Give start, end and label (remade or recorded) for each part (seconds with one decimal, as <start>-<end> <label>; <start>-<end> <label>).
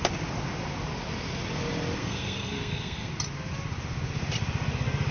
0.0-2.0 recorded; 2.0-3.1 remade; 3.1-5.1 recorded